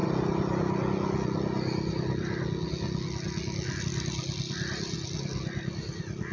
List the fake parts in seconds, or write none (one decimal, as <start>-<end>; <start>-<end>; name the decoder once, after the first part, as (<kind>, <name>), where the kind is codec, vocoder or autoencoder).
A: 3.8-6.3 (vocoder, BigVGAN v2)